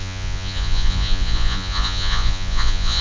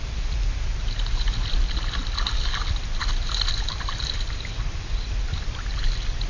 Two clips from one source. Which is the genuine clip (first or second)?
second